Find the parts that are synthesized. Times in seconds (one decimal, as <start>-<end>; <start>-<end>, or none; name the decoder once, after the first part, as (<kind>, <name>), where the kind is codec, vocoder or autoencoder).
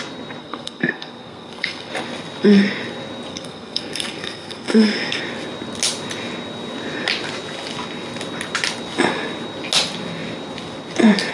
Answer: 0.4-1.9 (codec, SNAC); 3.3-5.2